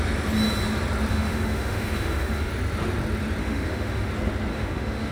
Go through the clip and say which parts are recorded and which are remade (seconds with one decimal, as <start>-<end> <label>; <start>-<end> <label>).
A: 0.0-1.1 recorded; 1.1-2.5 remade; 2.5-3.4 recorded; 3.4-4.1 remade; 4.1-4.5 recorded; 4.5-5.1 remade